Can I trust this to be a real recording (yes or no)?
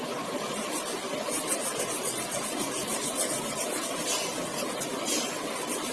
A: yes